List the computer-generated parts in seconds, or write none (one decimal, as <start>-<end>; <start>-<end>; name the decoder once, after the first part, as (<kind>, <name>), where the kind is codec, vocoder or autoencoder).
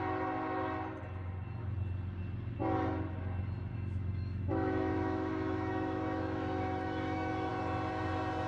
3.7-7.5 (autoencoder, DAC-VAE)